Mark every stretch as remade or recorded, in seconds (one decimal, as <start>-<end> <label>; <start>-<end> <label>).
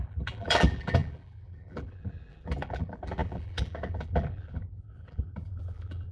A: 0.0-6.1 remade